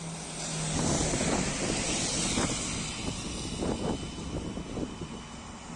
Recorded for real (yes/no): yes